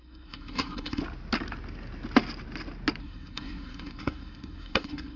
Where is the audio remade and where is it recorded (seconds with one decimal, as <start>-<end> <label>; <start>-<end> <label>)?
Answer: 0.0-1.0 remade; 1.0-3.0 recorded; 3.0-5.2 remade